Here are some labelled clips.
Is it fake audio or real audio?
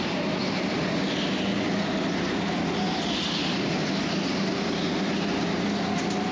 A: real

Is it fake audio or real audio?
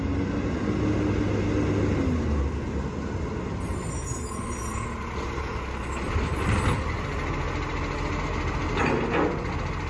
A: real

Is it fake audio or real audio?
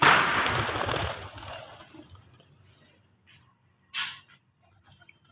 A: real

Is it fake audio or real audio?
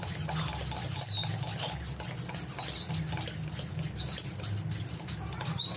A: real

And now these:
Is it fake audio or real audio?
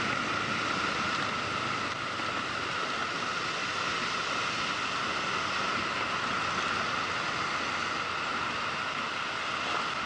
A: real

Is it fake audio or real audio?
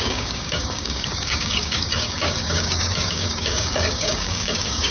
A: fake